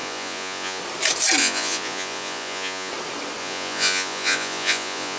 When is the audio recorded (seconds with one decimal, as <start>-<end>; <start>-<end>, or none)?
0.8-1.4; 2.9-3.4